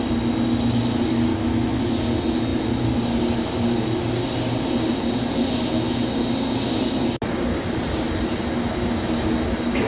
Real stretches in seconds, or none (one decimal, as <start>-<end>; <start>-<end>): 0.0-1.3; 1.8-9.9